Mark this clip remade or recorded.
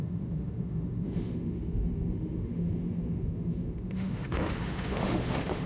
remade